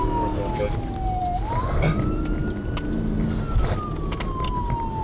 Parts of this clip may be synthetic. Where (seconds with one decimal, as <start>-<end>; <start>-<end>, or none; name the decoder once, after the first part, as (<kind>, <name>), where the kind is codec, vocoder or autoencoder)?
none